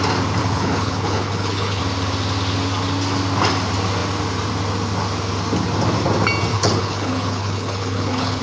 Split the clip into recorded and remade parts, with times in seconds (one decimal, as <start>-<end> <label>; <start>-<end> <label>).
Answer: 0.0-0.4 recorded; 0.4-1.8 remade; 1.8-6.5 recorded; 6.5-8.4 remade